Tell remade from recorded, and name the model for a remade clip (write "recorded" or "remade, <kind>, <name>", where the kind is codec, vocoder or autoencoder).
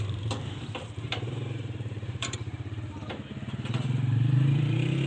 remade, vocoder, BigVGAN v2